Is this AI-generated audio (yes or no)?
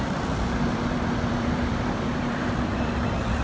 yes